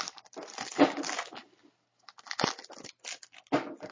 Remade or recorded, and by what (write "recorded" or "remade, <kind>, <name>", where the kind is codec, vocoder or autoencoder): recorded